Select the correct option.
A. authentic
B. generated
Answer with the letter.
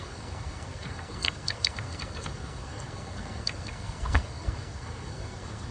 B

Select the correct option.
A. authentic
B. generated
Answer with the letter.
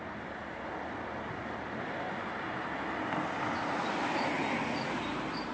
A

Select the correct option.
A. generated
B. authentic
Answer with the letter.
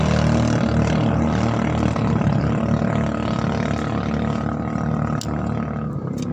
B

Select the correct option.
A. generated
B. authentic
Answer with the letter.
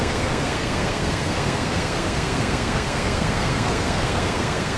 A